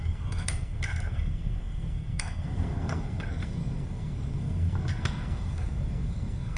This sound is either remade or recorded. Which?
remade